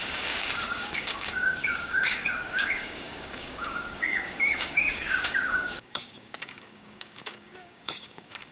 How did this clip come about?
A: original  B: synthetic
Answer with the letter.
B